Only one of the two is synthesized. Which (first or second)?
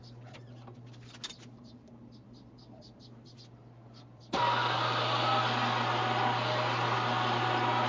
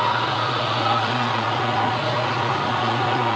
second